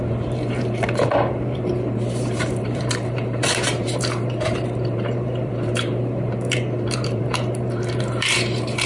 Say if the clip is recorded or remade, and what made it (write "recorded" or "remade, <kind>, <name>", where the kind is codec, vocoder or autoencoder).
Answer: remade, vocoder, BigVGAN v2